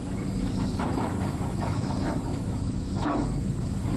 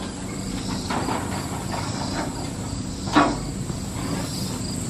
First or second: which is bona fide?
second